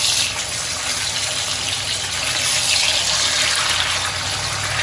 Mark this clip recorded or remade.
recorded